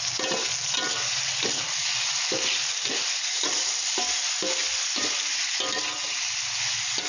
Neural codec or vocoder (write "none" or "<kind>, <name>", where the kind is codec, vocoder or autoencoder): none